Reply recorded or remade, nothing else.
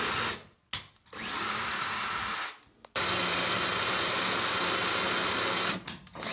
recorded